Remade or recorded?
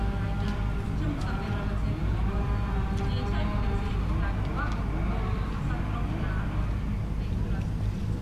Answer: recorded